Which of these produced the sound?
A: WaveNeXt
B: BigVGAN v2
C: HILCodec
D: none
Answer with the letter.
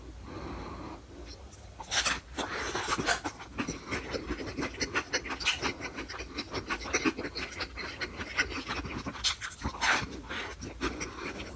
D